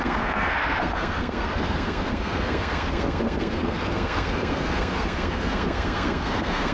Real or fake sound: fake